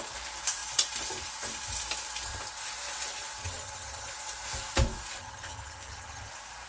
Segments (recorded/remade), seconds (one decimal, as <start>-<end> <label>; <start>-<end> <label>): 0.0-3.4 recorded; 3.4-4.1 remade; 4.1-5.2 recorded; 5.2-6.3 remade; 6.3-6.7 recorded

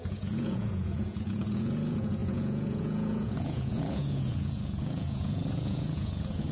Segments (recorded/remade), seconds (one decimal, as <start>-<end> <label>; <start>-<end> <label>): 0.0-6.5 remade

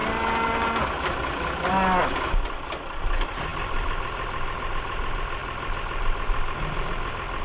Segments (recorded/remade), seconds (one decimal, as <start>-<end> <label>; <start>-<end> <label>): 0.0-7.4 recorded

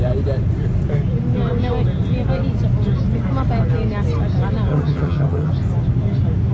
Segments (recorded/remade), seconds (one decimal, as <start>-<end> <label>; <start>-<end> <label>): 0.0-4.7 recorded; 4.7-5.5 remade; 5.5-6.5 recorded

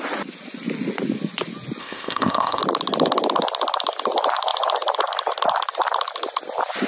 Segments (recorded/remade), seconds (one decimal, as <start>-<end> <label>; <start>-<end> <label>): 0.0-1.8 recorded; 1.8-2.6 remade; 2.6-6.9 recorded

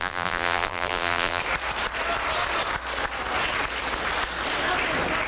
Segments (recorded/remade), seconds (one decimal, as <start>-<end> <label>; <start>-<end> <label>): 0.0-1.4 remade; 1.4-5.3 recorded

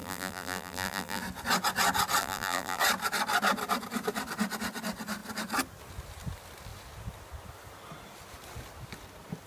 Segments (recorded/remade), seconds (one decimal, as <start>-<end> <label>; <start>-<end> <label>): 0.0-1.2 remade; 1.2-2.2 recorded; 2.2-2.8 remade; 2.8-9.5 recorded

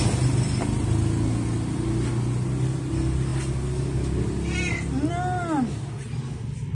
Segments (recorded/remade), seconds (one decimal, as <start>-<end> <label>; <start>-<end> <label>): 0.0-6.7 recorded